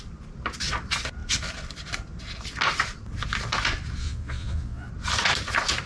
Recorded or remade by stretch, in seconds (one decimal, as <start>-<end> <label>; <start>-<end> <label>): 0.0-4.0 recorded; 4.0-4.9 remade; 4.9-5.9 recorded